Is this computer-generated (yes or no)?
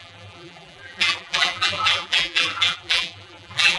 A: yes